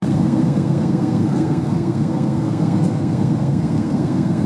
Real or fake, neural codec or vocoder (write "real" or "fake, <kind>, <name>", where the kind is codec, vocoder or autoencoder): fake, codec, SNAC